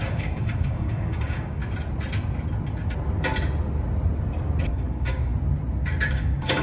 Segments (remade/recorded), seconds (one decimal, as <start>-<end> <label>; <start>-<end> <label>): 0.0-1.6 remade; 1.6-4.7 recorded; 4.7-5.3 remade; 5.3-6.1 recorded; 6.1-6.6 remade